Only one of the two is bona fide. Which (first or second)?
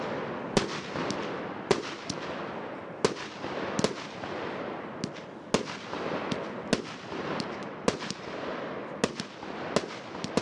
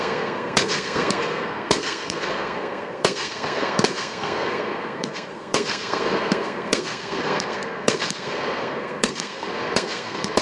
first